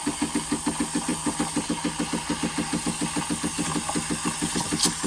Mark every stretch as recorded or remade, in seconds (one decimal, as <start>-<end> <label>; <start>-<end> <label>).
0.0-5.1 recorded